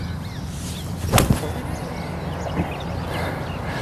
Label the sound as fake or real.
real